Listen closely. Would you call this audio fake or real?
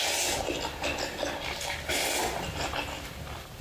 real